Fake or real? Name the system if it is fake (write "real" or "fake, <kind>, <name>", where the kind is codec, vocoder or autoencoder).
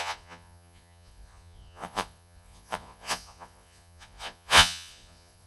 fake, vocoder, Vocos